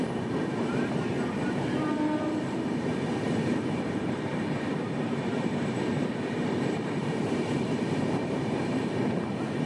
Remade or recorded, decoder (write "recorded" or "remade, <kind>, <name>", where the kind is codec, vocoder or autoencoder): remade, vocoder, BigVGAN v2